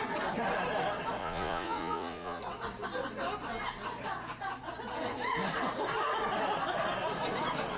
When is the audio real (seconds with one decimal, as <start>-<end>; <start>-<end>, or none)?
0.0-1.2; 2.4-7.8